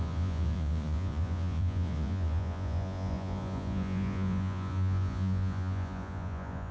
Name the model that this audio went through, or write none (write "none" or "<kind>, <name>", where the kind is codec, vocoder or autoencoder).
vocoder, Vocos